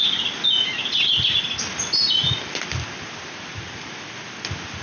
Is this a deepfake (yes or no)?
no